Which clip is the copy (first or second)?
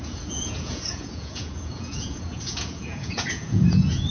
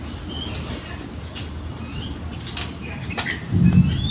first